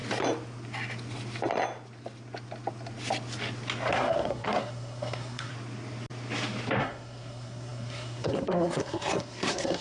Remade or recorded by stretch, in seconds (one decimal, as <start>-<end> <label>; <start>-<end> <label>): 0.0-3.9 recorded; 3.9-5.5 remade; 5.5-6.8 recorded; 6.8-9.8 remade